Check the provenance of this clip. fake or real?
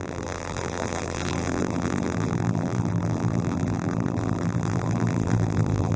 fake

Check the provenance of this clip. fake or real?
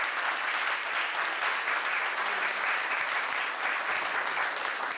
real